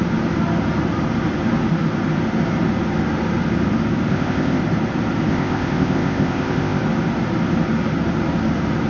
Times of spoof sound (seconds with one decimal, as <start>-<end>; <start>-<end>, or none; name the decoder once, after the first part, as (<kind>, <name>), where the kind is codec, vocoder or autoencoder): 4.1-4.6 (codec, ZipCodec); 5.3-6.8